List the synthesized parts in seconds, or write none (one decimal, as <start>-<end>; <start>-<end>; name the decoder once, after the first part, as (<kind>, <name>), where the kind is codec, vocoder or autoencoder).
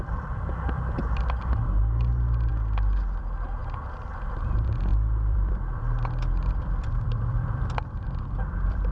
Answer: 4.9-8.9 (vocoder, BigVGAN v2)